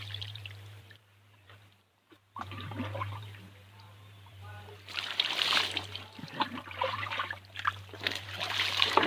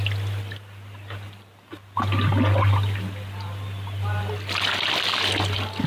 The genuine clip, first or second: second